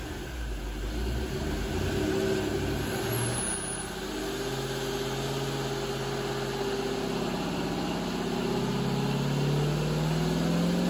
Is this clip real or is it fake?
real